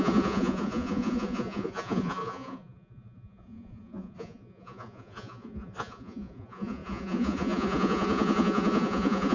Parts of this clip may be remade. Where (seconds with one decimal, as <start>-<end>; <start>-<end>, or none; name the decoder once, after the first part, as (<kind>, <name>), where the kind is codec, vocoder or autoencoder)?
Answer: 0.0-9.3 (vocoder, Vocos)